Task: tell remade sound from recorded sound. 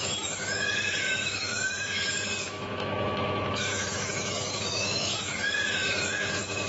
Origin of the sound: remade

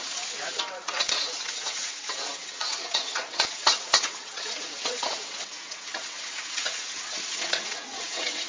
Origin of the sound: remade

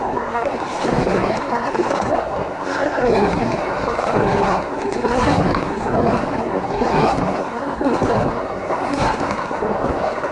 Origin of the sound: remade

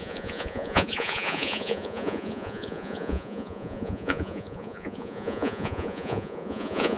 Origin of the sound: remade